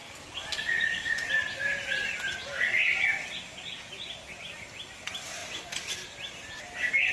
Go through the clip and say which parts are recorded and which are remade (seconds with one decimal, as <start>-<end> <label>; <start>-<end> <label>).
0.0-1.1 remade; 1.1-7.1 recorded